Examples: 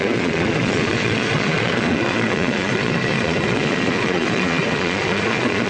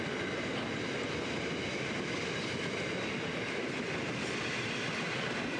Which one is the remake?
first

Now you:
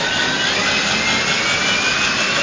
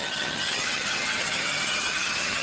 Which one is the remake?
second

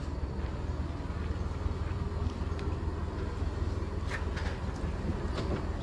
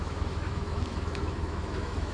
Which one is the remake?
second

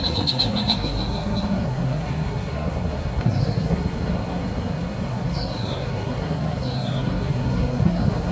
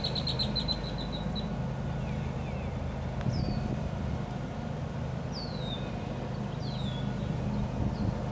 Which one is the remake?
first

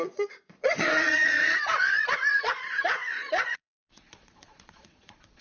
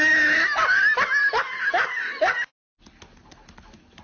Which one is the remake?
first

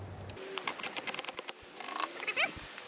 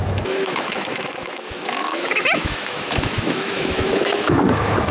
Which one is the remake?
second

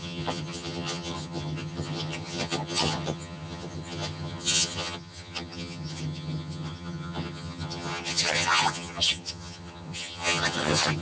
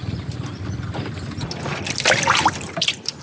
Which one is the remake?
first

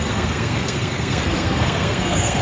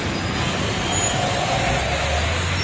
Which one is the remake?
first